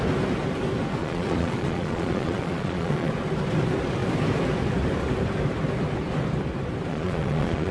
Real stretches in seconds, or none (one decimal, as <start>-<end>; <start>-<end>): 0.0-1.0; 3.1-6.9